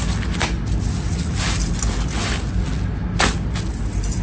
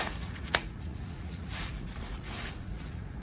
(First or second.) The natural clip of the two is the first